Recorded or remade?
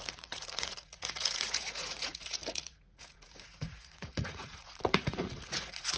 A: remade